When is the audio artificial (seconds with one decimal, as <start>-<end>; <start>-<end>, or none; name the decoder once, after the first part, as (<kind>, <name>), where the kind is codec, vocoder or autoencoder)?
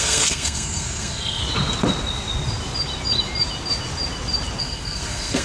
0.0-1.4 (codec, SNAC); 4.6-5.4